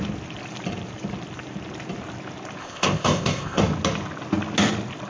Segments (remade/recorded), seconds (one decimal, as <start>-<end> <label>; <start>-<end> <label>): 0.0-2.6 recorded; 2.6-3.6 remade; 3.6-5.1 recorded

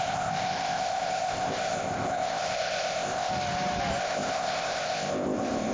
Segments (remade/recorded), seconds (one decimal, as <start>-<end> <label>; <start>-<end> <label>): 0.0-3.3 remade; 3.3-4.0 recorded; 4.0-5.7 remade

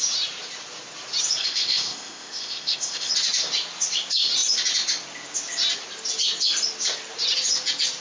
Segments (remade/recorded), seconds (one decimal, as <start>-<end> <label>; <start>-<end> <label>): 0.0-1.4 recorded; 1.4-3.1 remade; 3.1-8.0 recorded

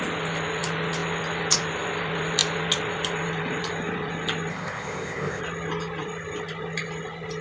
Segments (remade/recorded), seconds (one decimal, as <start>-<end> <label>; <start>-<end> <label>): 0.0-4.5 recorded; 4.5-5.4 remade; 5.4-7.4 recorded

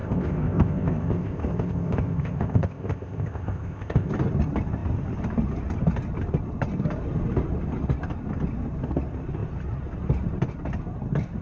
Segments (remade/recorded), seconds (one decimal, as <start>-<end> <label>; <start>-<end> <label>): 0.0-4.1 remade; 4.1-11.4 recorded